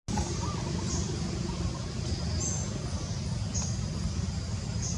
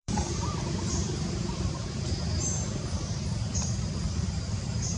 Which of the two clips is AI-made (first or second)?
second